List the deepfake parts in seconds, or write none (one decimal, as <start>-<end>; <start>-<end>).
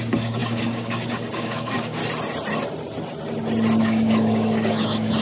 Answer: 0.0-2.0; 3.8-5.2